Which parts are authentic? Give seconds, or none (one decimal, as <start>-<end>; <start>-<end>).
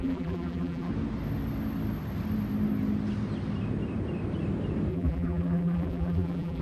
0.9-4.9